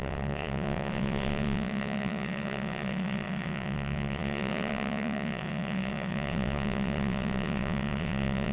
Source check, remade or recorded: remade